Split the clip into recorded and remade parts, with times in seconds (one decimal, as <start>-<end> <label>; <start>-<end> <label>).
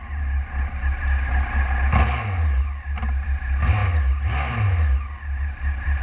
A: 0.0-6.0 recorded